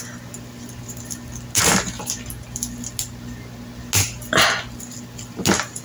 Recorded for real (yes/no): yes